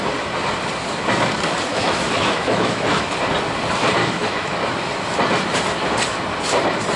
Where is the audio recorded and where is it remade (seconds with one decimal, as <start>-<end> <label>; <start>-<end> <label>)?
0.0-1.7 recorded; 1.7-3.1 remade; 3.1-4.0 recorded; 4.0-4.7 remade; 4.7-7.0 recorded

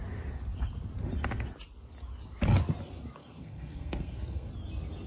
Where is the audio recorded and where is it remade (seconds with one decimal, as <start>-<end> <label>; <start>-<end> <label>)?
0.0-3.2 recorded; 3.2-4.5 remade; 4.5-5.1 recorded

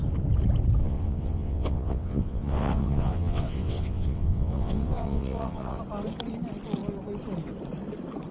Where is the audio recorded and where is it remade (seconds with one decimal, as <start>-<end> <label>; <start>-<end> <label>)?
0.0-0.8 recorded; 0.8-5.8 remade; 5.8-8.3 recorded

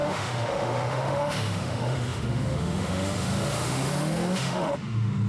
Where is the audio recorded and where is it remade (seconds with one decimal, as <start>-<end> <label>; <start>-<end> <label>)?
0.0-5.3 remade

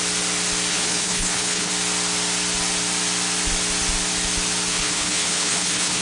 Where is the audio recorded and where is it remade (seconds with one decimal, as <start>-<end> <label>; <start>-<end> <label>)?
0.0-0.7 recorded; 0.7-1.7 remade; 1.7-4.7 recorded; 4.7-6.0 remade

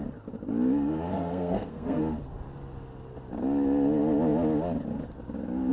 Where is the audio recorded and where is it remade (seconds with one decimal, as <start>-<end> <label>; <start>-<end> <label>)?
0.0-1.1 recorded; 1.1-2.0 remade; 2.0-5.7 recorded